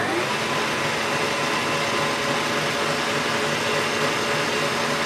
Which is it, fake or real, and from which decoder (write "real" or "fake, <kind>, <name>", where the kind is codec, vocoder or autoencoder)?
real